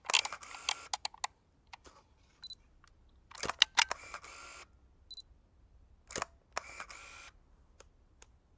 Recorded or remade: recorded